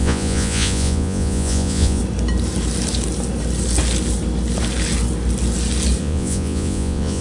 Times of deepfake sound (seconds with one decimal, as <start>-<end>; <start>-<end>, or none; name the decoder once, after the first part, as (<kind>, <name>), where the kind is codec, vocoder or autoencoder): 0.0-2.0 (vocoder, Vocos); 6.0-7.2